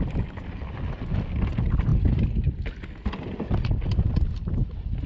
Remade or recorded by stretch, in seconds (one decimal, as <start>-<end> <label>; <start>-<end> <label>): 0.0-5.1 recorded